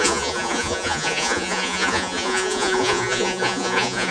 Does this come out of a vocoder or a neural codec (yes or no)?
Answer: yes